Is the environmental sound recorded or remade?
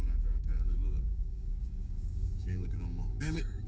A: remade